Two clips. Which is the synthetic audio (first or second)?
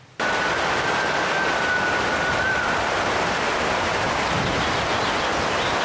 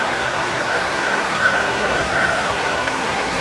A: second